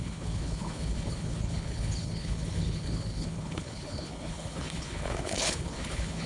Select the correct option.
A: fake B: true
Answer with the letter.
A